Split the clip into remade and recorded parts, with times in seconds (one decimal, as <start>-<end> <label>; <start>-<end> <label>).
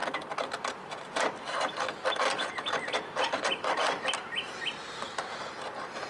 0.0-6.1 recorded